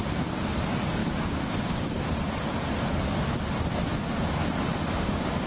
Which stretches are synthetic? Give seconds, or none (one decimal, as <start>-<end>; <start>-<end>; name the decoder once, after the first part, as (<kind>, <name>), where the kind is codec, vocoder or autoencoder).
1.0-2.1 (codec, DAC)